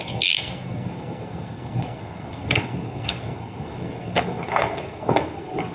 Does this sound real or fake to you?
fake